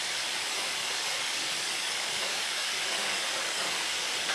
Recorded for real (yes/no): no